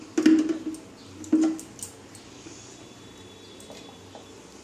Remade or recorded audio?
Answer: recorded